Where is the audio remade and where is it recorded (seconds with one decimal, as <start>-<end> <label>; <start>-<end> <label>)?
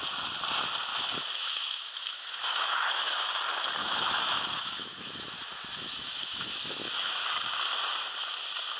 0.0-0.9 recorded; 0.9-3.3 remade; 3.3-3.8 recorded; 3.8-7.2 remade; 7.2-8.8 recorded